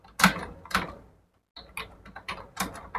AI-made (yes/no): no